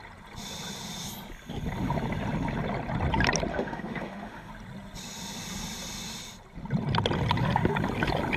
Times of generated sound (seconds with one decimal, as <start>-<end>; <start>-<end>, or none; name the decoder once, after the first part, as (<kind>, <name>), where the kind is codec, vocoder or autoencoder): 3.5-4.5 (autoencoder, DAC-VAE)